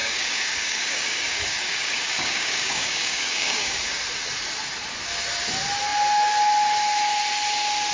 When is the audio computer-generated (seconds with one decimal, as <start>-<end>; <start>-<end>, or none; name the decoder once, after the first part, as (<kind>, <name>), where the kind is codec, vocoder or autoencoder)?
0.0-4.0 (codec, DAC)